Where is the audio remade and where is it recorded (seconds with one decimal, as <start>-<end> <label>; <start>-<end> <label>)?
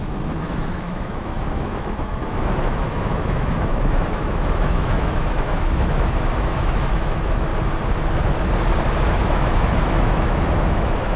0.0-7.5 remade; 7.5-9.0 recorded; 9.0-11.2 remade